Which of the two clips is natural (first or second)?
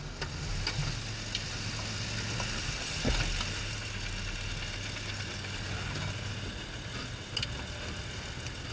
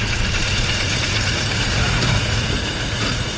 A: first